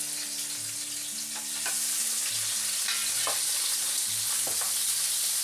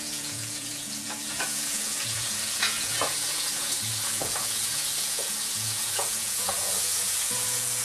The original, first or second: first